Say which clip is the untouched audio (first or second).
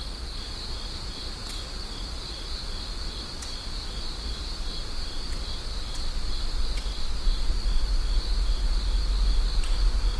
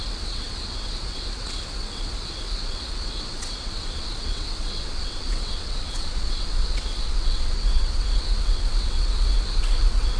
first